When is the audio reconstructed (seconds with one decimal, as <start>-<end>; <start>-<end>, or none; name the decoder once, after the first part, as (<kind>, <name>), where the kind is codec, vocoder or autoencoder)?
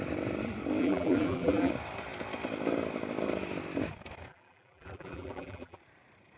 0.8-1.7 (vocoder, BigVGAN v2); 4.3-5.8